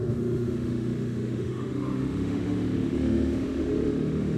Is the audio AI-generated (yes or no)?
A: yes